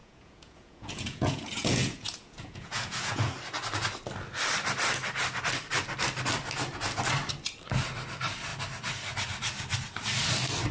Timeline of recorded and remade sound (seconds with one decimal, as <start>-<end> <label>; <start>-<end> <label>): 0.0-3.3 remade; 3.3-10.7 recorded